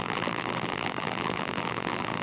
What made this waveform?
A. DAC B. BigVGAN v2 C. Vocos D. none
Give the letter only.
B